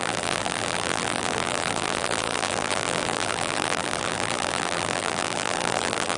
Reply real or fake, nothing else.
fake